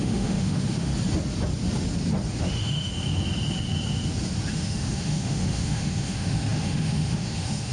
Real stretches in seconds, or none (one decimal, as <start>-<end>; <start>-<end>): 0.9-2.4; 2.9-4.5